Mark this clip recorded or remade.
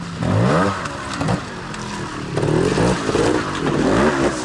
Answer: recorded